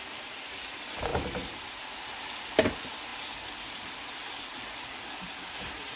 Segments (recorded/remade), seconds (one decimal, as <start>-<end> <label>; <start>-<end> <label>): 0.0-6.0 recorded